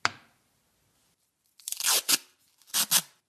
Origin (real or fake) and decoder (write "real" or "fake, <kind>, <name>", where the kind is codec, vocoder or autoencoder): real